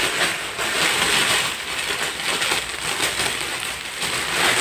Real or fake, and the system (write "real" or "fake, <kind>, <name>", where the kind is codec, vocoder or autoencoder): real